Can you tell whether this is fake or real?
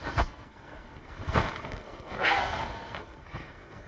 fake